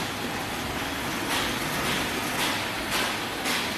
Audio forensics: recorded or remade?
recorded